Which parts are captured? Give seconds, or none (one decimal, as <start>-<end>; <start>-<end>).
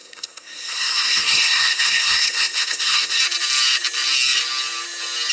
3.2-5.3